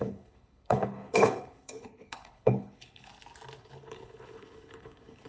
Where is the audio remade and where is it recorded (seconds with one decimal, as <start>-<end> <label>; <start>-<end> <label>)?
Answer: 0.0-3.1 remade; 3.1-3.6 recorded; 3.6-5.3 remade